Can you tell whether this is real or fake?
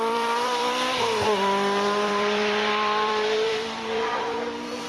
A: fake